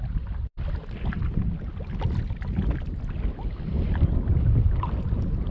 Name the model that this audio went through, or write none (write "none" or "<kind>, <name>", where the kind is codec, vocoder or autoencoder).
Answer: none